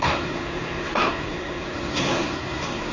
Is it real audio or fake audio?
fake